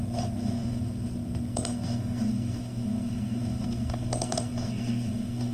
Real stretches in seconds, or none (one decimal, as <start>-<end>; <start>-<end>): none